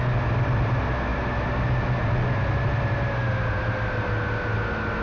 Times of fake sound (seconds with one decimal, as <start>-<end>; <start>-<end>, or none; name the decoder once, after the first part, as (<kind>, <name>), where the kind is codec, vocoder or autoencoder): none